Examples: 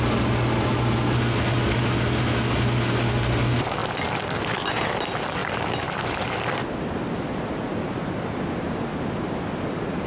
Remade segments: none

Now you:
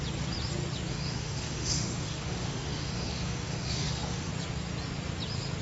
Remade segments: 0.9-4.3

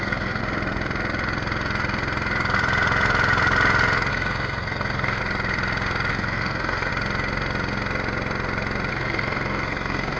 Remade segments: 0.0-0.4; 4.1-5.2; 6.1-6.9; 8.9-10.2

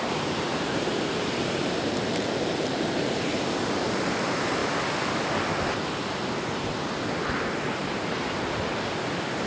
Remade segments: 0.0-4.6; 7.1-9.5

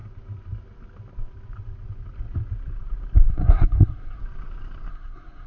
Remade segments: 3.3-4.2; 4.9-5.5

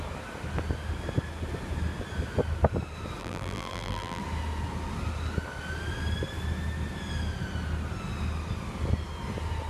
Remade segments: 3.2-4.2

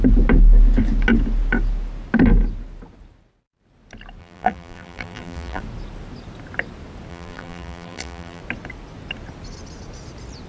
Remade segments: 4.2-5.6; 7.1-8.4